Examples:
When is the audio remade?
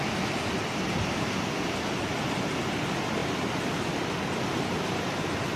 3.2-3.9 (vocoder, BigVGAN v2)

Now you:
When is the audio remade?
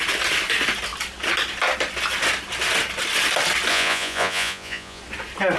3.7-5.0 (vocoder, Vocos)